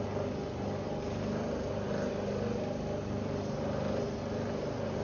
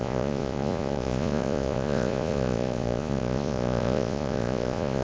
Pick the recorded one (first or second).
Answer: first